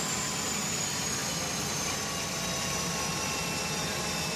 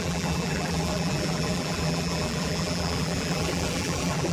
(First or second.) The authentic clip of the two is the first